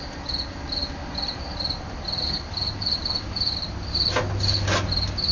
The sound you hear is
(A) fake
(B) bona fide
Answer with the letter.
B